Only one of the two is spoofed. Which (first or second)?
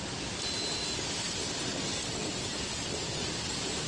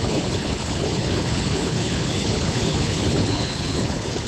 second